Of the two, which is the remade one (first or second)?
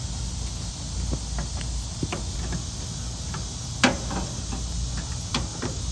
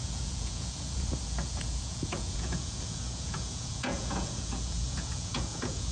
second